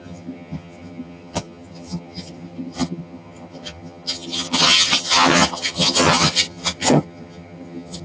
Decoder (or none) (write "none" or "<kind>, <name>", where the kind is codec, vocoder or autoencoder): vocoder, HiFi-GAN